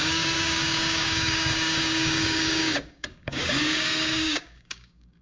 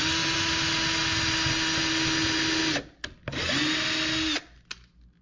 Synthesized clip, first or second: first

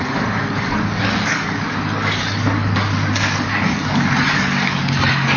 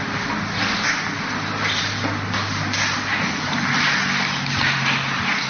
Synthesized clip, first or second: first